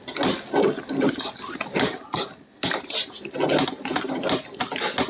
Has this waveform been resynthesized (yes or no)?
no